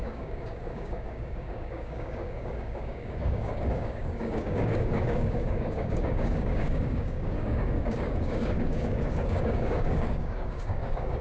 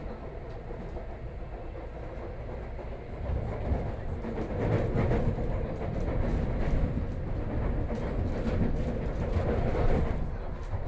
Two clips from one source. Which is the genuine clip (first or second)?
second